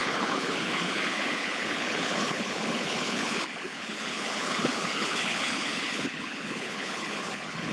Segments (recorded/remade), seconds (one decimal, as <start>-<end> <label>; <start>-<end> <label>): 0.0-7.7 remade